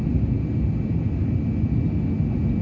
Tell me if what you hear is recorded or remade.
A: recorded